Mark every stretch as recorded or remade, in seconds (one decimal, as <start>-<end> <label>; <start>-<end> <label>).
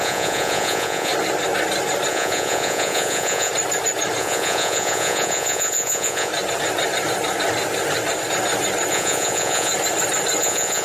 0.0-1.1 remade; 1.1-2.1 recorded; 2.1-3.5 remade; 3.5-4.2 recorded; 4.2-6.3 remade; 6.3-8.9 recorded; 8.9-9.7 remade; 9.7-10.4 recorded; 10.4-10.8 remade